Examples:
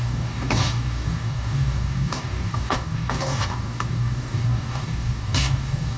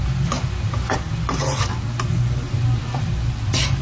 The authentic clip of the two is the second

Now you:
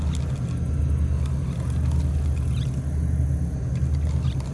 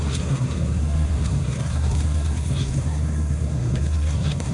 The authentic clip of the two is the first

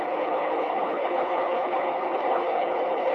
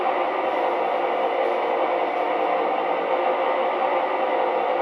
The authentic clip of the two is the second